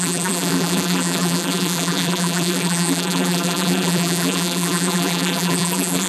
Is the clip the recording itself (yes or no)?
no